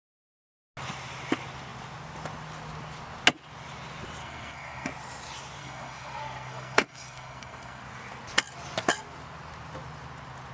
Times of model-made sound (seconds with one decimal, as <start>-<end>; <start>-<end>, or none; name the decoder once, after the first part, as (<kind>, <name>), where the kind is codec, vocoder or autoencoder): 4.2-4.9 (codec, SNAC); 5.6-7.8